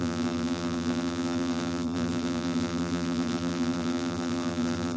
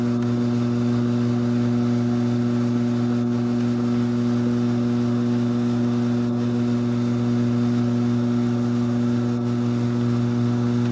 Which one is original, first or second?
second